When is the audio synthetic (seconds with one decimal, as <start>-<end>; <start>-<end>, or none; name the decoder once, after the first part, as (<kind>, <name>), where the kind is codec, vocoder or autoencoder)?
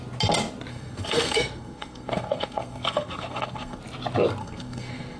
0.7-3.8 (codec, SNAC); 4.4-5.2